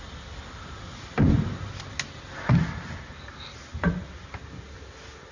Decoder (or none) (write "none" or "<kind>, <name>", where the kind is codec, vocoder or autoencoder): none